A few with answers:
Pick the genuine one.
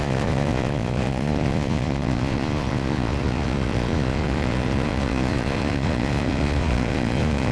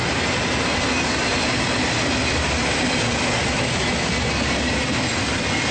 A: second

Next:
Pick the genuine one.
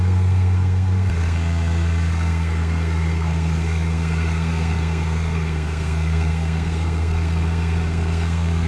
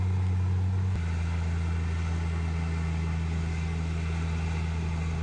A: second